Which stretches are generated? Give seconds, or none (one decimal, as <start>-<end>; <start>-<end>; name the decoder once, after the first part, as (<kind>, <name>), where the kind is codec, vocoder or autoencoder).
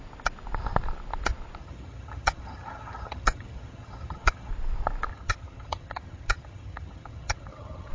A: 1.6-4.5 (vocoder, HiFi-GAN); 5.1-7.9